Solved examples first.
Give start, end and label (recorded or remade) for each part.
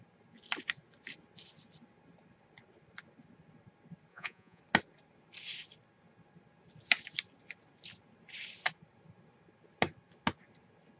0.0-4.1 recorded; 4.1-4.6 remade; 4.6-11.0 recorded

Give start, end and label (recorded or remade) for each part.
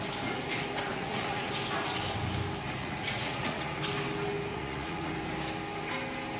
0.0-0.9 recorded; 0.9-1.5 remade; 1.5-2.8 recorded; 2.8-3.8 remade; 3.8-4.5 recorded; 4.5-5.1 remade; 5.1-6.4 recorded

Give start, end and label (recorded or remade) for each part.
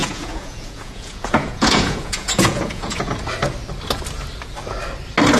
0.0-3.1 remade; 3.1-5.4 recorded